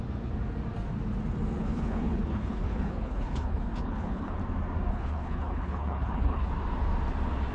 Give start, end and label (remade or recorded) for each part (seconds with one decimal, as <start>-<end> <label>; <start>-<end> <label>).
0.0-1.6 recorded; 1.6-4.3 remade; 4.3-4.9 recorded; 4.9-6.5 remade; 6.5-7.5 recorded